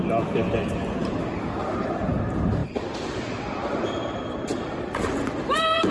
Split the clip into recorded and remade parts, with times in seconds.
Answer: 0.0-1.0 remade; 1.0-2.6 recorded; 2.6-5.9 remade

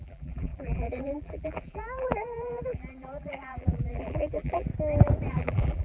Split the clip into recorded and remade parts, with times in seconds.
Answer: 0.0-4.7 remade; 4.7-5.3 recorded; 5.3-5.8 remade